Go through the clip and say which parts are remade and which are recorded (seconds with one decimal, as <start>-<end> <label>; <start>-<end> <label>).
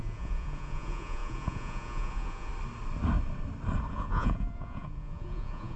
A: 0.0-2.5 remade; 2.5-3.9 recorded; 3.9-5.8 remade